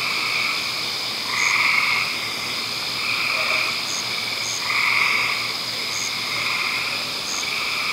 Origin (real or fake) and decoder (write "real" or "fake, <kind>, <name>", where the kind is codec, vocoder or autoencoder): real